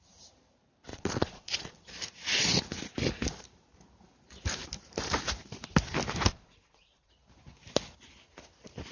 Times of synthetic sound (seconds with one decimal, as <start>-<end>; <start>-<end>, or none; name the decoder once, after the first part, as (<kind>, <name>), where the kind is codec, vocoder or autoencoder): 0.9-1.8 (vocoder, Vocos); 6.3-7.1